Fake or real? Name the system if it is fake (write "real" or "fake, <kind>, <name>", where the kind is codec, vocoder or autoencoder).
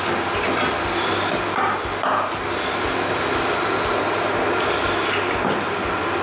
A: real